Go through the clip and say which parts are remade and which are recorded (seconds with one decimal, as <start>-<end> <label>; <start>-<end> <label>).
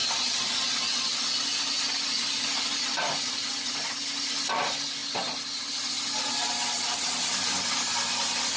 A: 0.0-8.6 recorded